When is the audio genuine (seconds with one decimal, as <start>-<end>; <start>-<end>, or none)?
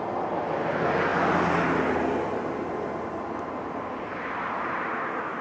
0.0-5.4